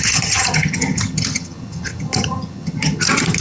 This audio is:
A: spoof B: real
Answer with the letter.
A